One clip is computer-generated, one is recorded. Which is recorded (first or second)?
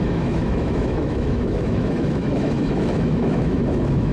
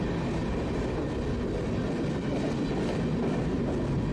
second